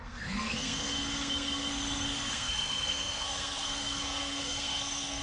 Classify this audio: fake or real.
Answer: fake